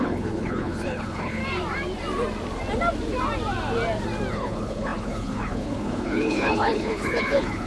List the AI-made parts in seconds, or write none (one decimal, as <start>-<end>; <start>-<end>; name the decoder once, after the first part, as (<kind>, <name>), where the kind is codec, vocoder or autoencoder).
0.0-1.4 (codec, HILCodec); 4.3-7.7